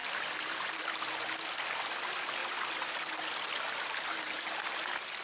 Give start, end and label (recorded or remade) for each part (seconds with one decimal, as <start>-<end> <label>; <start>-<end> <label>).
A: 0.0-5.2 recorded